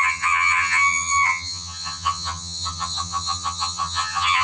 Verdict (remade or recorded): remade